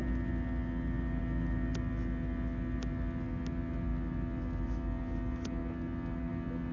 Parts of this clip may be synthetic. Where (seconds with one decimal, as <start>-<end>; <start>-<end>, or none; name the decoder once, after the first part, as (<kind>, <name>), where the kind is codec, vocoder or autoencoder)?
none